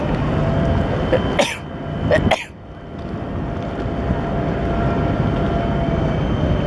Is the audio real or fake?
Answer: real